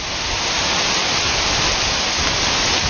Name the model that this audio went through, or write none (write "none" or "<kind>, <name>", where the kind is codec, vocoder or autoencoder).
none